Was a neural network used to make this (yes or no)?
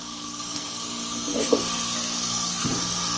yes